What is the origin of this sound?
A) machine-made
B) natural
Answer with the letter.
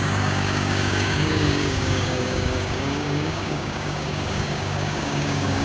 A